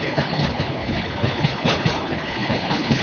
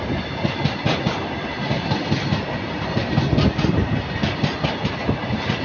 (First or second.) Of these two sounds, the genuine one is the second